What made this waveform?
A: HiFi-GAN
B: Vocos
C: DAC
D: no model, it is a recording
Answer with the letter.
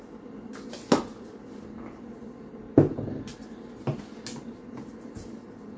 D